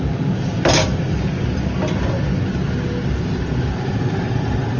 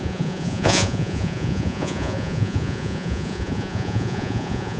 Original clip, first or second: first